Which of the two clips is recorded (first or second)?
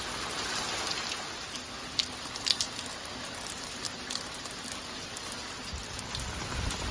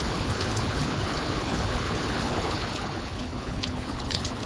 first